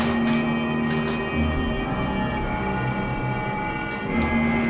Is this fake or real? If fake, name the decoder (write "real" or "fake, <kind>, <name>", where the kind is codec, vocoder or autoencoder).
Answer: real